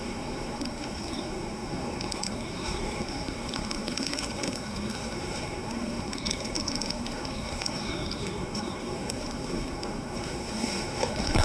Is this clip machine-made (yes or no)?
yes